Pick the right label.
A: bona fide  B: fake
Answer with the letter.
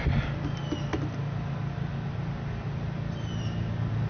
A